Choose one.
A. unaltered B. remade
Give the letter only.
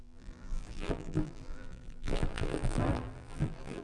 B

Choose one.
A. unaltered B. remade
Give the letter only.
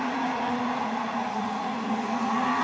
B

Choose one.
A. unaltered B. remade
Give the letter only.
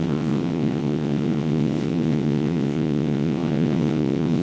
B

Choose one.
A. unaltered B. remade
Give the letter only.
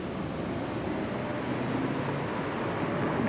A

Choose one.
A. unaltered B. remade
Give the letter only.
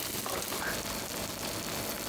A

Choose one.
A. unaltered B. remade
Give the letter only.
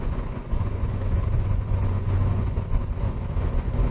B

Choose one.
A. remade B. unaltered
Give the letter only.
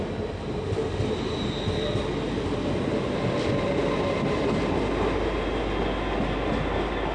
B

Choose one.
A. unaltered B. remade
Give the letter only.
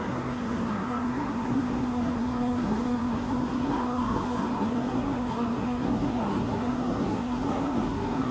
B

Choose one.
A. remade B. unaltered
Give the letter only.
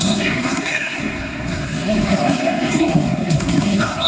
A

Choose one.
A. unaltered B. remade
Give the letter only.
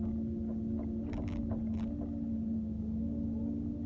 A